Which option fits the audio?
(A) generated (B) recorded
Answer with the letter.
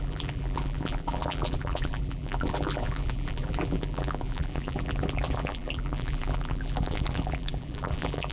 A